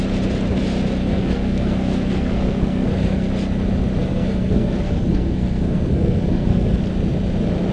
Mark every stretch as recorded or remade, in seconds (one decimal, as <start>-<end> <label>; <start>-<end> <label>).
0.0-1.0 recorded; 1.0-3.3 remade; 3.3-4.0 recorded; 4.0-6.8 remade; 6.8-7.7 recorded